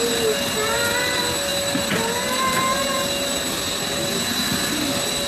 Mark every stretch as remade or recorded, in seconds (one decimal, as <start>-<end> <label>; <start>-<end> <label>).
0.0-5.3 recorded